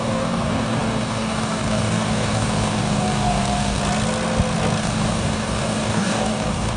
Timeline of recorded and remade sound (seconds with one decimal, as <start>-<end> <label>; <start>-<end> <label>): 0.0-3.8 remade; 3.8-4.8 recorded; 4.8-6.8 remade